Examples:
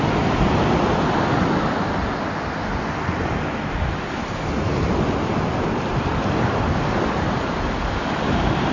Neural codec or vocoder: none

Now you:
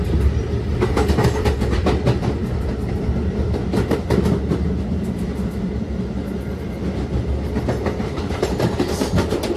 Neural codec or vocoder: none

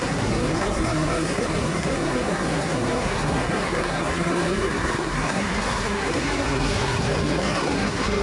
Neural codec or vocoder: codec, SNAC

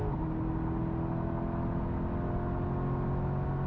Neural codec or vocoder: none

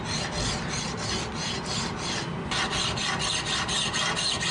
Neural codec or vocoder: none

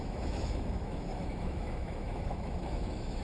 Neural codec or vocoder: autoencoder, DAC-VAE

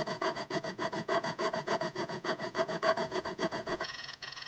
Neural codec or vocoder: vocoder, Vocos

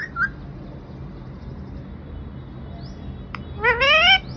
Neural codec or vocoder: none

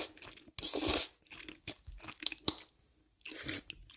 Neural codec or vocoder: none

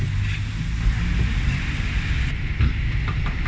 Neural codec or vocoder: none